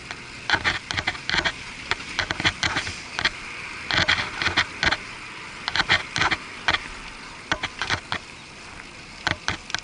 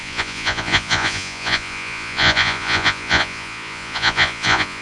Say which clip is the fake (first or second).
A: second